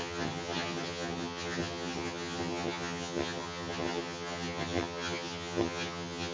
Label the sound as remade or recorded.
remade